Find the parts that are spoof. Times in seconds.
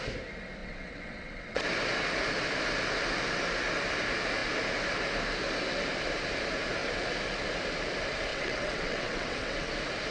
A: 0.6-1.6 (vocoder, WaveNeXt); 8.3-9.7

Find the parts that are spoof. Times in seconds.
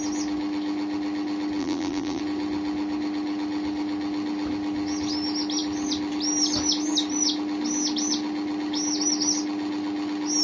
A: 1.6-2.2 (vocoder, BigVGAN v2)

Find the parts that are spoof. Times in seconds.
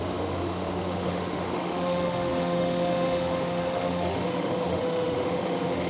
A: 0.0-5.9 (autoencoder, DAC-VAE)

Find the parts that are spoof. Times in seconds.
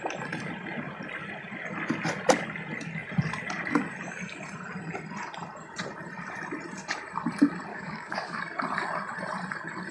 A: 7.7-8.4 (codec, DAC)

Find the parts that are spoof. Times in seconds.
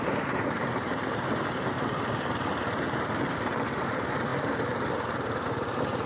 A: 0.0-6.1 (vocoder, BigVGAN v2)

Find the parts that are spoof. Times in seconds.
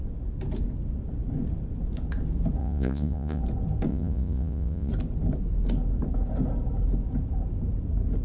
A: 2.6-3.4 (vocoder, Vocos); 3.9-4.9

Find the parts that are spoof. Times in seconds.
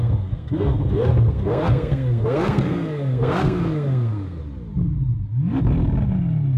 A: 0.0-4.4 (codec, SNAC)